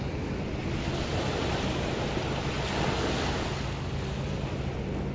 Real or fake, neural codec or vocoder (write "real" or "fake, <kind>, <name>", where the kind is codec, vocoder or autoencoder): real